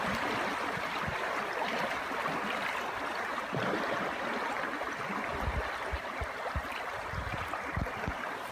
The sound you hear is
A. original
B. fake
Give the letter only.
B